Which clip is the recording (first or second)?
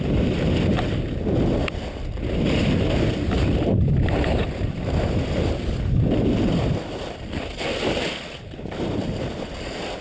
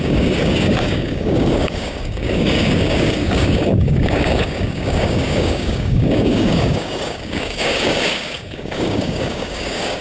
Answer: first